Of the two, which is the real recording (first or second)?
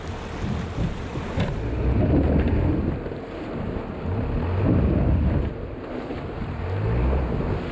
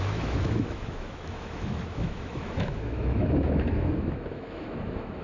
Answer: first